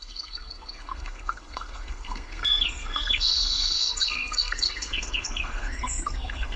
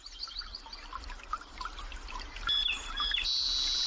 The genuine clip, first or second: second